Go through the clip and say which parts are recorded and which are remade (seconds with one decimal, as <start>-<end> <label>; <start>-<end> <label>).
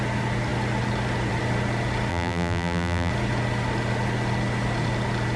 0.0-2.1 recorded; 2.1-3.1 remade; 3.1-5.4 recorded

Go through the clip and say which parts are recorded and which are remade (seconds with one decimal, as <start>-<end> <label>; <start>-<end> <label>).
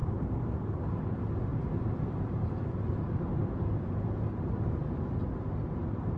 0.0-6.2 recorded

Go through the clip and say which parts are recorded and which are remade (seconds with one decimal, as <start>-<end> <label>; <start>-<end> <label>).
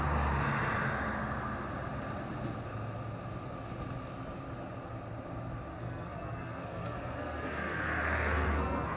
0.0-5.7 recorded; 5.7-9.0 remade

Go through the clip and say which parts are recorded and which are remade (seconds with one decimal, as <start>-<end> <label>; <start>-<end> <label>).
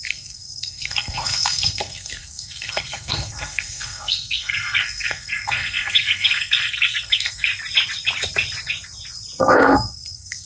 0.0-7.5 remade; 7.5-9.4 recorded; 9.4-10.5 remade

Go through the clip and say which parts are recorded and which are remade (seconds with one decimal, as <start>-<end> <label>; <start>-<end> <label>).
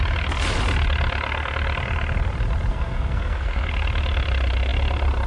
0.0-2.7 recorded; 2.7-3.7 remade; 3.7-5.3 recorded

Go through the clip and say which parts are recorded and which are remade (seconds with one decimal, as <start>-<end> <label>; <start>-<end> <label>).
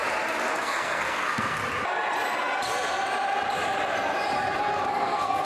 0.0-0.5 recorded; 0.5-1.6 remade; 1.6-4.8 recorded; 4.8-5.4 remade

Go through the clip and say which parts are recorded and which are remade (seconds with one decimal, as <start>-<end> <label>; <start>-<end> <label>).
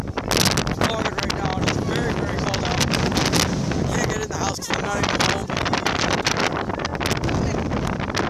0.0-5.4 recorded; 5.4-6.5 remade; 6.5-8.3 recorded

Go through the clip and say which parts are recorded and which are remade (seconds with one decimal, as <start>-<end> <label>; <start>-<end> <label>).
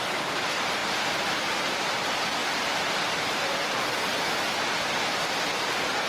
0.0-0.8 remade; 0.8-1.7 recorded; 1.7-2.4 remade; 2.4-3.1 recorded; 3.1-4.1 remade; 4.1-5.1 recorded; 5.1-6.1 remade